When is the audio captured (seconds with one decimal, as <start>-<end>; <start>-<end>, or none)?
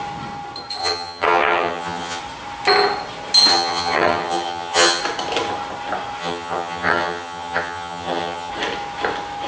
0.0-0.8; 2.2-3.5; 5.0-6.2; 8.5-9.5